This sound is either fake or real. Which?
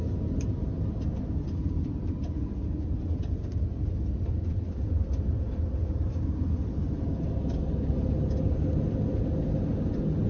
real